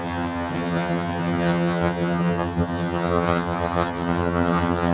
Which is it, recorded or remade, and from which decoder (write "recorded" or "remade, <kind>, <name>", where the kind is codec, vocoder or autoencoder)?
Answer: remade, vocoder, HiFi-GAN